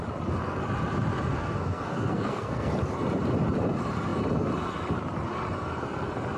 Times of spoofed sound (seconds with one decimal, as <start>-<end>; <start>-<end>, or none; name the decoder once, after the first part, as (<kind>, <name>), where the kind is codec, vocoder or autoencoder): 1.3-2.7 (codec, SNAC)